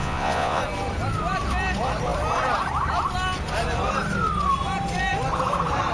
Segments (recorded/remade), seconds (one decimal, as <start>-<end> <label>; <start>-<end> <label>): 0.0-0.6 remade; 0.6-5.9 recorded